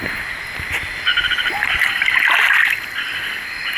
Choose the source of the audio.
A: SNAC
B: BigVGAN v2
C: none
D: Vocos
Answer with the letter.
C